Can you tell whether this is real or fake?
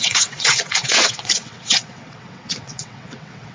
fake